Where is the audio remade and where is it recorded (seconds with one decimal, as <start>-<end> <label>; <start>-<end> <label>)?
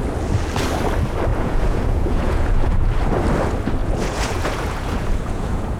0.0-1.3 recorded; 1.3-2.9 remade; 2.9-3.8 recorded; 3.8-5.8 remade